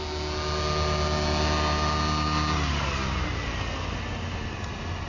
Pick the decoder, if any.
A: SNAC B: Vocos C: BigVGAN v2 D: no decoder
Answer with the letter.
D